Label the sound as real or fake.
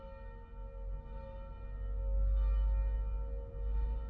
real